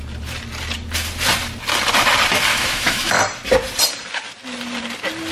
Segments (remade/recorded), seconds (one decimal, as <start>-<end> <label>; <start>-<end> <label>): 0.0-2.5 recorded; 2.5-3.2 remade; 3.2-5.3 recorded